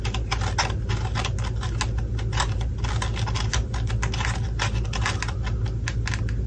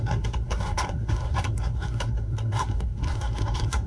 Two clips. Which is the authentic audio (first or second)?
first